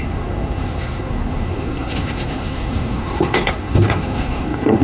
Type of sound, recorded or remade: remade